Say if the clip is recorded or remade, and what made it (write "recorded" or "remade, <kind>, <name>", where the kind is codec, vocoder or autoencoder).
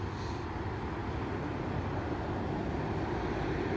recorded